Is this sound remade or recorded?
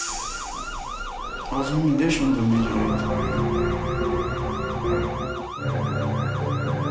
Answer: recorded